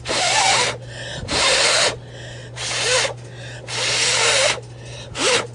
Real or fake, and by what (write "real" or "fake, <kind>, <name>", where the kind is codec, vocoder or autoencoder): real